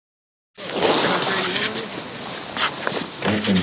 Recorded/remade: recorded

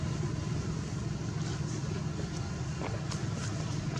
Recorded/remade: recorded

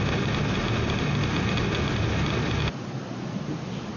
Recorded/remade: recorded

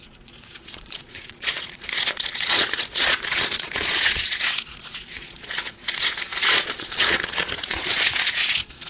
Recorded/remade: remade